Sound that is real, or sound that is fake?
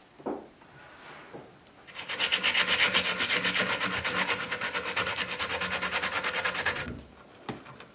real